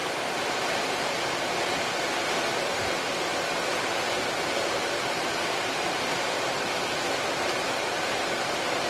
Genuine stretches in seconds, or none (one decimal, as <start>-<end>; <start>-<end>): 1.8-3.3; 3.9-8.9